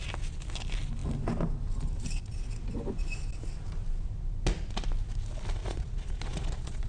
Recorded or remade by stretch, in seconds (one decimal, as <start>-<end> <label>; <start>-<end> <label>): 0.0-5.6 recorded; 5.6-6.9 remade